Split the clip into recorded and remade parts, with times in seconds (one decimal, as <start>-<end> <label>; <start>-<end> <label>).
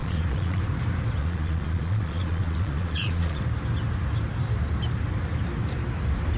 0.0-0.6 remade; 0.6-1.2 recorded; 1.2-3.4 remade; 3.4-6.4 recorded